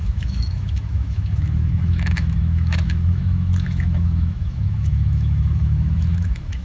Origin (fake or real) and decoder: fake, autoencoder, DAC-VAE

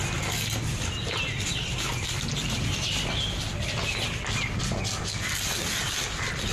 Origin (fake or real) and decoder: real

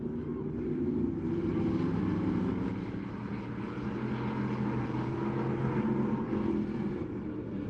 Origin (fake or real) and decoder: real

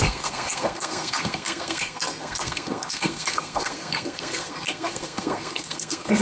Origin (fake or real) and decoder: fake, codec, SNAC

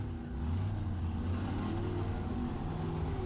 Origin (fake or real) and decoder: real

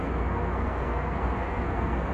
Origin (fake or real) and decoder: fake, codec, SNAC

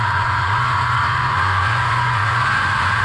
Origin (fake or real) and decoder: fake, vocoder, Vocos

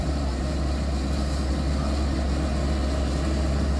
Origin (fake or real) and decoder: real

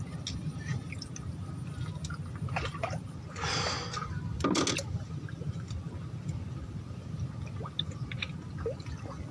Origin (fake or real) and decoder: real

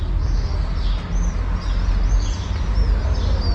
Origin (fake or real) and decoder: real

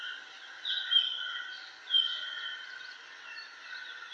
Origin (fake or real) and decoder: real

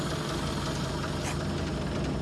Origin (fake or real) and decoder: real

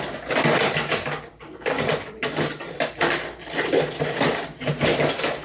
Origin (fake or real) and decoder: real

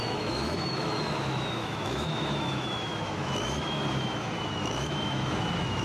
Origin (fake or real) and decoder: fake, autoencoder, DAC-VAE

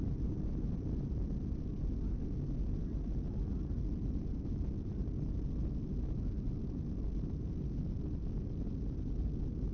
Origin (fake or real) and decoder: real